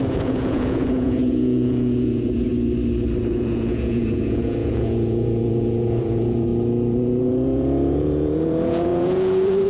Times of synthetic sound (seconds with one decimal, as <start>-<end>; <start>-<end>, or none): 0.0-2.5; 3.2-6.5; 7.2-9.7